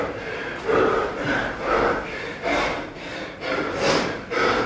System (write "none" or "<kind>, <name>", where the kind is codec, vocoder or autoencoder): none